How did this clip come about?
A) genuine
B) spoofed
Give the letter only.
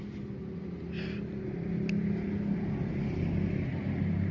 A